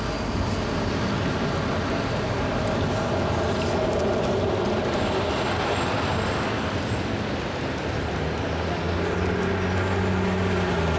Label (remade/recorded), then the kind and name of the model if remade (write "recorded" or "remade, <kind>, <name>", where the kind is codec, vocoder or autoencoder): recorded